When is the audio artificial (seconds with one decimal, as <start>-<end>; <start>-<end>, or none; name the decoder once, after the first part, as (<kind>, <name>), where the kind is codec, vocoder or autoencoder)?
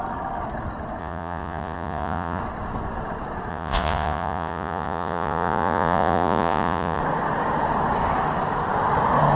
1.0-2.4 (vocoder, Vocos); 3.5-7.0